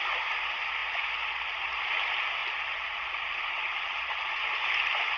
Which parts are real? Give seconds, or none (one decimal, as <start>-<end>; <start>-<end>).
0.0-5.2